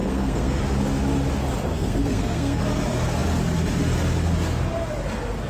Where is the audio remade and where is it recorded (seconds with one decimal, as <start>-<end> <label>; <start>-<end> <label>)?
0.0-0.6 remade; 0.6-1.7 recorded; 1.7-2.6 remade; 2.6-5.5 recorded